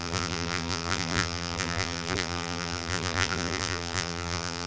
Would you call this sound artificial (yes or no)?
yes